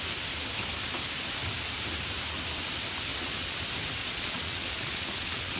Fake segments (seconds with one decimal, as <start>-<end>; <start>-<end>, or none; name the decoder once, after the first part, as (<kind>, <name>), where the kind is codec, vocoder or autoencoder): 3.1-3.6 (vocoder, Vocos); 4.0-5.6